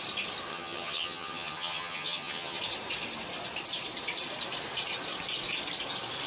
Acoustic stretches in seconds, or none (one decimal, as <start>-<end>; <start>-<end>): 0.0-0.5; 2.6-6.3

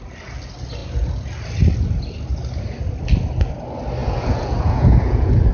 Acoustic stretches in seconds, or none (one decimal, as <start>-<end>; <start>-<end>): 0.0-4.0

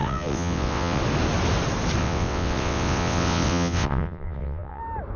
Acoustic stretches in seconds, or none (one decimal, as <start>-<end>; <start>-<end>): 1.0-2.0; 4.8-5.2

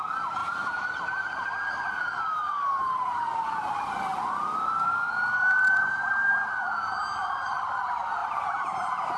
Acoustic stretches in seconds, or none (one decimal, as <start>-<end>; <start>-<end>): 0.0-0.4; 1.0-2.7; 4.3-7.2; 7.8-9.2

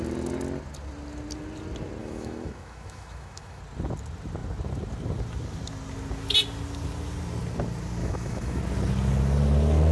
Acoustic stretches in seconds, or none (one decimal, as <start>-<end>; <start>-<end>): 0.0-2.0; 3.6-8.0; 8.6-9.9

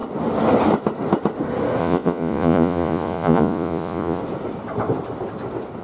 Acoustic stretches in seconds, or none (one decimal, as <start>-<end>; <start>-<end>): 0.0-1.8; 4.2-5.8

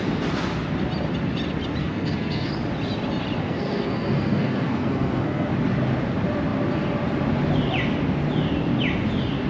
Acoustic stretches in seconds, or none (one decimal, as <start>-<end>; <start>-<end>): 0.0-1.8; 2.5-3.4; 5.5-9.5